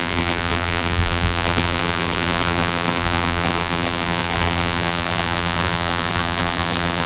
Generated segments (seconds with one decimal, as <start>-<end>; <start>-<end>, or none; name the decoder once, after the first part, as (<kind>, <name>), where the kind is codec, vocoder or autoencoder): 0.0-7.1 (vocoder, BigVGAN v2)